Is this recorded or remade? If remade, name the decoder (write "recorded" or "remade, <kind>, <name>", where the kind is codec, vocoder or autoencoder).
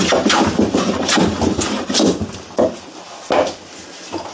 recorded